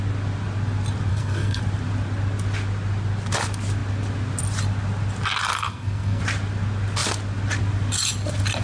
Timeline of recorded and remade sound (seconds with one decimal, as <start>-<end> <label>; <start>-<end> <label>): 0.0-1.1 recorded; 1.1-1.6 remade; 1.6-5.5 recorded; 5.5-6.2 remade; 6.2-8.6 recorded